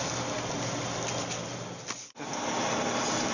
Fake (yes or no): no